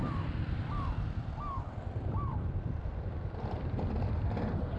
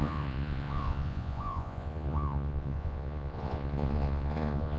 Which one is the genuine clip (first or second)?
first